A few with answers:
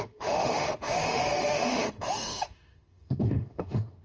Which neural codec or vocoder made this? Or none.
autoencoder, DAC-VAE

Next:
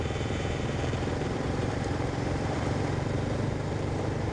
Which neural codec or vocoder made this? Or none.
vocoder, BigVGAN v2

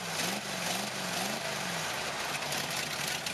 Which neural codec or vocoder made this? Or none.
none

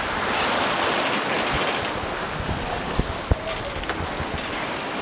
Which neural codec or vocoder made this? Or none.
none